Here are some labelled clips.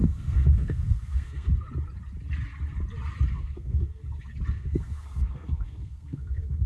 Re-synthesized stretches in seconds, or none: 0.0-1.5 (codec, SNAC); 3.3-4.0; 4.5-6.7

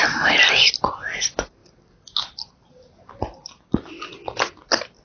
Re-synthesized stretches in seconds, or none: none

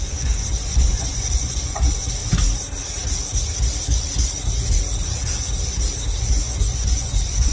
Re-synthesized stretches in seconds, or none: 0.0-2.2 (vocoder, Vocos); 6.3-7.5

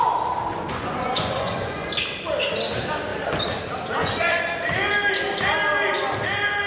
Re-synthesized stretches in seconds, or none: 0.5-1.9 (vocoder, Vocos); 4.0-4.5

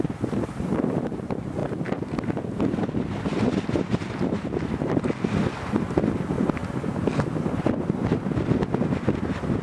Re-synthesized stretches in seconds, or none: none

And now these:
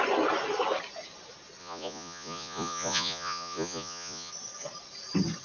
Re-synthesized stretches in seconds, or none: 1.6-4.3 (vocoder, Vocos)

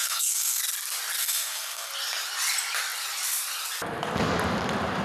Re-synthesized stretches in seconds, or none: 0.0-0.6 (codec, SNAC); 1.2-1.9

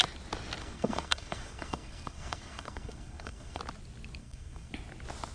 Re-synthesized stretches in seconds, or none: 0.6-3.6 (codec, SNAC); 4.2-4.7